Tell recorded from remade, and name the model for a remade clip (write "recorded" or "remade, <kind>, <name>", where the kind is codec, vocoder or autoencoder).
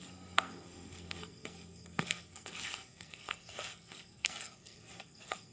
remade, codec, SNAC